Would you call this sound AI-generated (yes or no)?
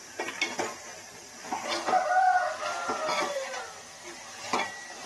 yes